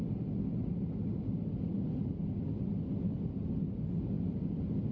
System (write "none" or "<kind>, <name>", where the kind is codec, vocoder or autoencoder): none